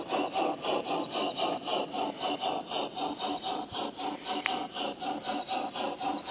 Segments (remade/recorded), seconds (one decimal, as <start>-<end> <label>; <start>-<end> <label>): 0.0-6.3 recorded